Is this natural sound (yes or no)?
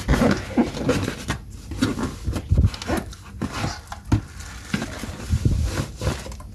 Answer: yes